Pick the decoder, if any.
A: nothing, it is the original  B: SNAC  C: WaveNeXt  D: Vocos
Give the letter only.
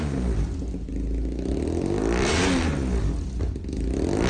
A